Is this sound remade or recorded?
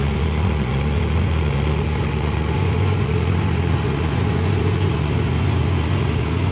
remade